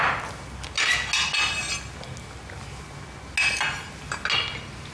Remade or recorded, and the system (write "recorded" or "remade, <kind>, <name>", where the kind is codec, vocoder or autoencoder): recorded